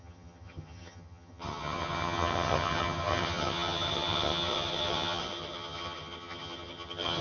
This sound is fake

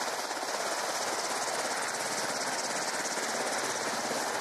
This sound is real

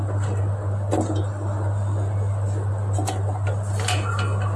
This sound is real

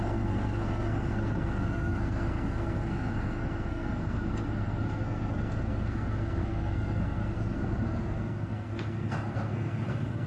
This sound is fake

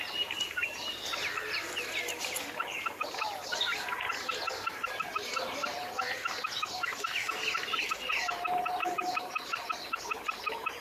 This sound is real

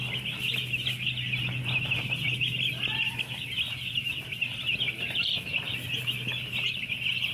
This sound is real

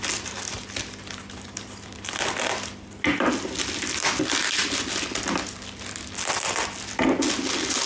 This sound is real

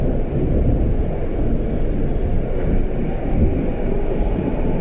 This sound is real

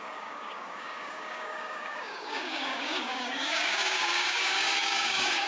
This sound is fake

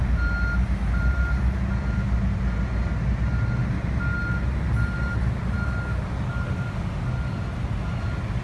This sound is real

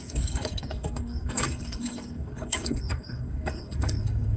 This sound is fake